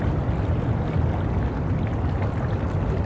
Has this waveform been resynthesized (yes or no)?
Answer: no